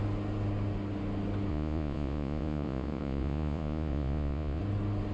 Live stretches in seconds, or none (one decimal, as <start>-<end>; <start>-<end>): 0.0-1.5; 4.6-5.1